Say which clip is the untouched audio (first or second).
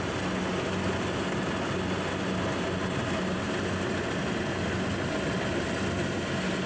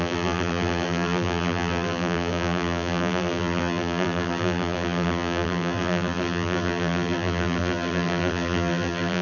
first